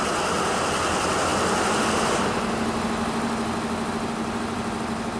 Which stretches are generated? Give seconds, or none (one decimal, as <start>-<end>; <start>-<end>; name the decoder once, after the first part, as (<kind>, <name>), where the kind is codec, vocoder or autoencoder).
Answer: none